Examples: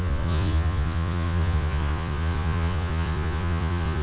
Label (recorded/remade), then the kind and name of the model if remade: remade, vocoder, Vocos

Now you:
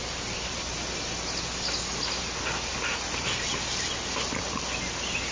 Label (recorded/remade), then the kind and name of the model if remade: recorded